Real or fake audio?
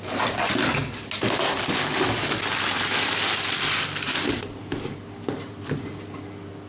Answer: real